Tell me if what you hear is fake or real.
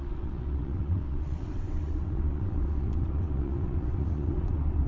fake